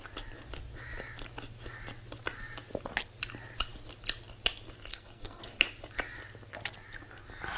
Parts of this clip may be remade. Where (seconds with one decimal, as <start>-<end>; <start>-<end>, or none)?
4.9-5.4